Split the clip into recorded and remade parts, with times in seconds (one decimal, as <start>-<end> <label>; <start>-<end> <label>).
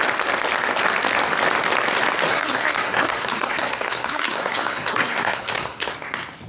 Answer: 0.0-2.3 recorded; 2.3-5.9 remade; 5.9-6.5 recorded